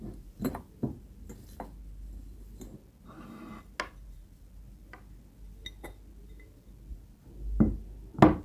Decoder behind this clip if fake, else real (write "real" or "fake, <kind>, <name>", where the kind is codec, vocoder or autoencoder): real